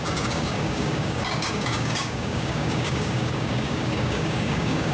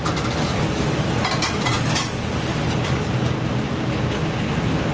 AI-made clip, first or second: first